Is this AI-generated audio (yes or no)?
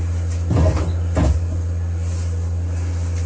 no